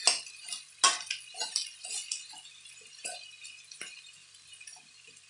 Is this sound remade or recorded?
recorded